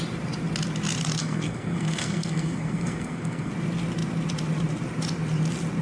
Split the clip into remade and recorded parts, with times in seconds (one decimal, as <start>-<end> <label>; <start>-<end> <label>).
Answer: 0.0-1.2 recorded; 1.2-3.5 remade; 3.5-5.8 recorded